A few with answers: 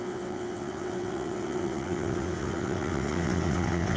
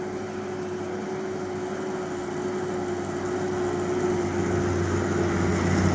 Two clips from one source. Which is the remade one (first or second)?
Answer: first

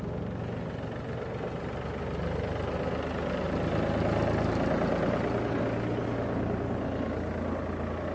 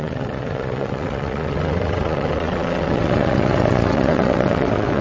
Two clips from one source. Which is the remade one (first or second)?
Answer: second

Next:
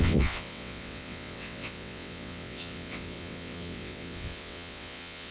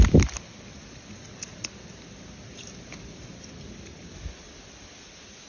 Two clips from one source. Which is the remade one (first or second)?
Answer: first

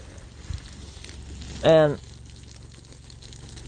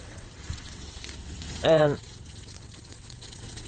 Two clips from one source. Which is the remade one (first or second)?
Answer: second